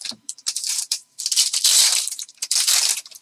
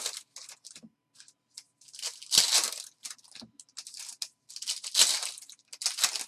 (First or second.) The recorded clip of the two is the second